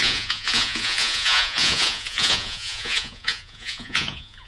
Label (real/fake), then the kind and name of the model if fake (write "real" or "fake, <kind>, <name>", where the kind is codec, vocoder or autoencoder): fake, vocoder, Vocos